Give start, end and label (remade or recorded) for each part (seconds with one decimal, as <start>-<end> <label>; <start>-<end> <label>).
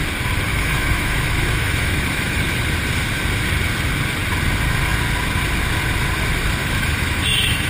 0.0-0.5 recorded; 0.5-2.4 remade; 2.4-6.6 recorded; 6.6-7.7 remade